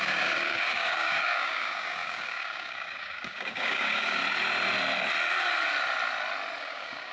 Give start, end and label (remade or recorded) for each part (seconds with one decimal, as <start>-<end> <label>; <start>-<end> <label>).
0.0-4.2 remade; 4.2-6.6 recorded; 6.6-7.1 remade